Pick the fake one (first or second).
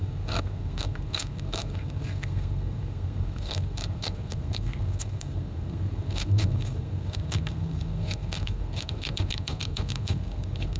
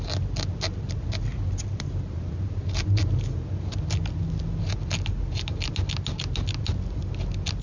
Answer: first